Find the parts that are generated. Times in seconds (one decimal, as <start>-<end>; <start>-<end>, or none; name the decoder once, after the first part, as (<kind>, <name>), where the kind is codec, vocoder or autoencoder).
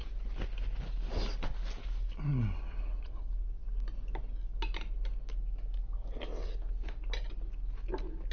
none